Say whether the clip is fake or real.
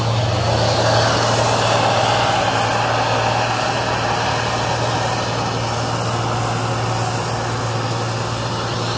real